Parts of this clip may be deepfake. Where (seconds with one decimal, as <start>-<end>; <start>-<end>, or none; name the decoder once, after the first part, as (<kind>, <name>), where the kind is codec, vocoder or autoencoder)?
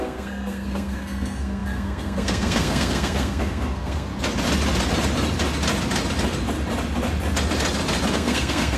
0.0-4.1 (codec, SNAC); 8.1-8.8